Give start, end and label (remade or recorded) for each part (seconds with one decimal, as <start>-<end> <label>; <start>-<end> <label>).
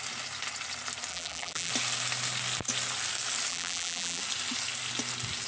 0.0-1.1 recorded; 1.1-1.7 remade; 1.7-3.5 recorded; 3.5-4.2 remade; 4.2-5.5 recorded